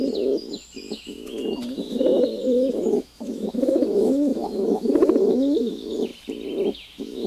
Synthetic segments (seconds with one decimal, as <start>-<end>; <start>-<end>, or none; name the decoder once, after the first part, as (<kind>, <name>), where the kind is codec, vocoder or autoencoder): 0.0-6.1 (autoencoder, DAC-VAE); 6.7-7.3